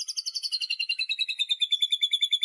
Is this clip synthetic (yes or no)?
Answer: no